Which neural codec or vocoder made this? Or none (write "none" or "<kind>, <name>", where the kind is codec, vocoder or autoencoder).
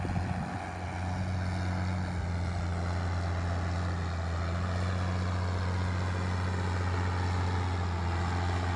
none